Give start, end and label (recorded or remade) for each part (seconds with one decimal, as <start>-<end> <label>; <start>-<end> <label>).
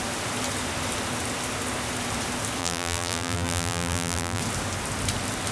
0.0-2.6 recorded; 2.6-4.4 remade; 4.4-5.5 recorded